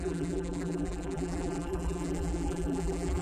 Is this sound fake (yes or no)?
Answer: yes